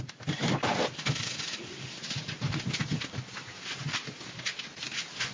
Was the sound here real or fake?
real